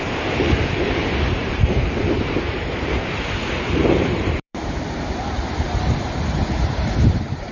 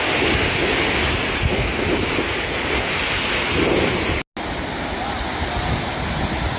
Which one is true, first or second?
second